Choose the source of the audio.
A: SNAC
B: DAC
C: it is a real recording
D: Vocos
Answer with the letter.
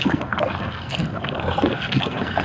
A